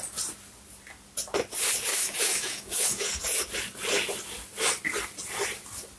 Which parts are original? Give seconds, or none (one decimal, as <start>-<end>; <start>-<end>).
0.0-1.9; 3.2-6.0